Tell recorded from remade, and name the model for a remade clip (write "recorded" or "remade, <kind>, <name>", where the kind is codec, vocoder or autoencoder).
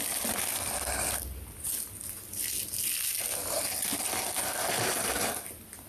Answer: recorded